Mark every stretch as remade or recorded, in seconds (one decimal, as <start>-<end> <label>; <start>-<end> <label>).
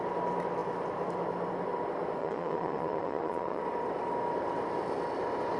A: 0.0-2.2 recorded; 2.2-3.6 remade; 3.6-5.6 recorded